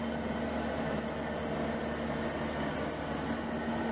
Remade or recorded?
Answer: recorded